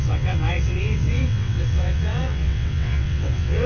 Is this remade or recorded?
remade